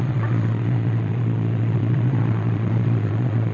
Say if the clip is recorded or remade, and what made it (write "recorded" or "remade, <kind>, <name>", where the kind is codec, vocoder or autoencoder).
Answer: remade, vocoder, Vocos